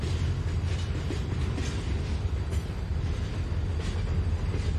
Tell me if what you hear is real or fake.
real